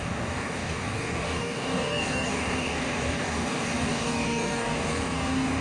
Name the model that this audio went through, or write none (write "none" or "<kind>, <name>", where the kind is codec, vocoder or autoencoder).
codec, DAC